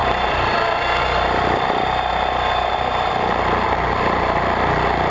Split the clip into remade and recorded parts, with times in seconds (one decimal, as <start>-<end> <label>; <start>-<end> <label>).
0.0-3.1 remade; 3.1-5.1 recorded